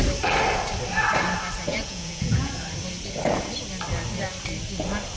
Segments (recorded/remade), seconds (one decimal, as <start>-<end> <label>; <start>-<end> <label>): 0.0-1.7 recorded; 1.7-2.5 remade; 2.5-5.2 recorded